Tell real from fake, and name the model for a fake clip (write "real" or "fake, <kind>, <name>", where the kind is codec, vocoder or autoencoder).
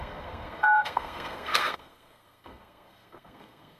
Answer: fake, codec, SNAC